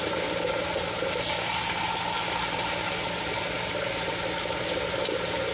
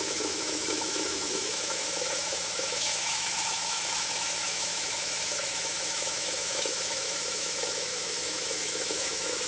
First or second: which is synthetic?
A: second